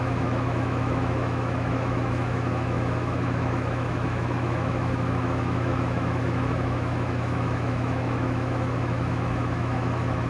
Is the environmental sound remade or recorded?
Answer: remade